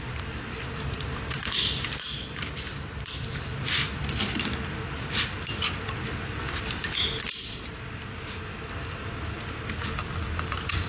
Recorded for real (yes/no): no